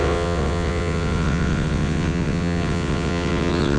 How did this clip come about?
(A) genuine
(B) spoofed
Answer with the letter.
B